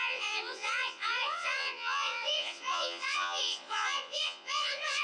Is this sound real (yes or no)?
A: no